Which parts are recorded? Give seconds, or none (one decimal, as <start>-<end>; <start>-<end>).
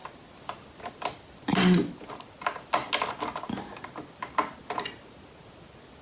0.0-6.0